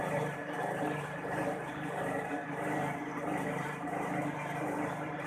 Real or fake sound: fake